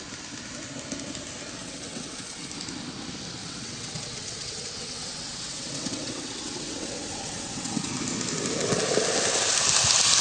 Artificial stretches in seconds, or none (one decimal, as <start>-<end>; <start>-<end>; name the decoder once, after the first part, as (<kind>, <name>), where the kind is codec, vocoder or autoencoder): 1.6-2.5 (vocoder, WaveNeXt); 3.4-7.9